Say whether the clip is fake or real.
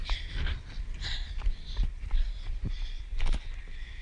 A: real